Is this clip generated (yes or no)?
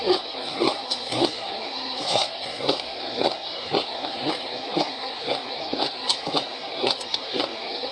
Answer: yes